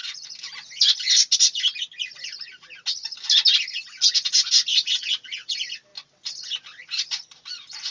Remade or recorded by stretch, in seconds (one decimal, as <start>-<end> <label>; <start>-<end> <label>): 0.0-4.7 recorded; 4.7-5.5 remade; 5.5-7.9 recorded